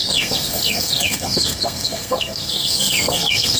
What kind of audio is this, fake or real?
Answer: fake